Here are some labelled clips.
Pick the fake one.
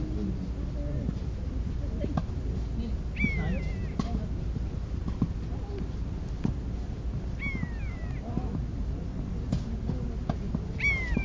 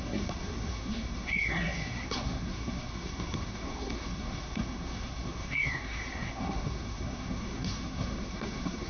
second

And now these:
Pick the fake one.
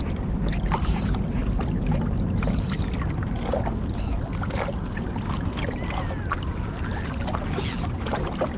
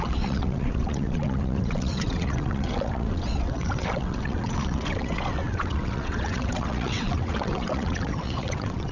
second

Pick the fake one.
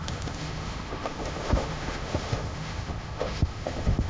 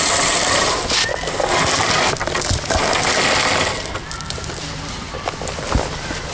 first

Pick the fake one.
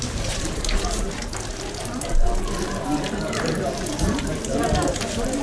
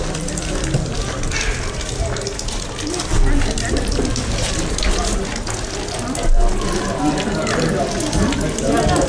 first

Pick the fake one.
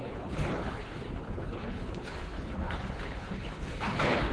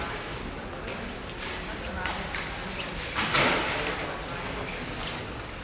first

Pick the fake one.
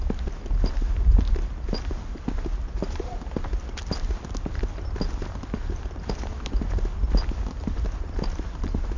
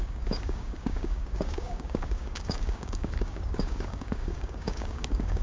second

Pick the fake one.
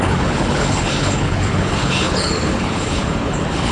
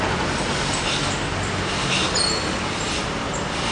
first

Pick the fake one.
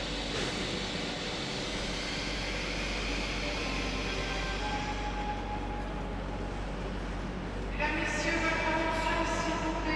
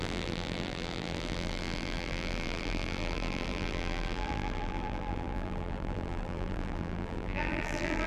second